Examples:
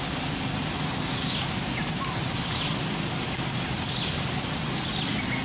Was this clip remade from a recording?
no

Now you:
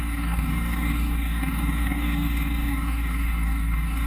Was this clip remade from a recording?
yes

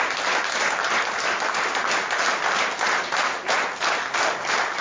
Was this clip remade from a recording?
no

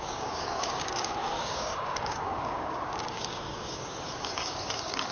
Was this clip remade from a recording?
yes